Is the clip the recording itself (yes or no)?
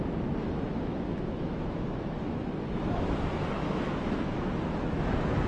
no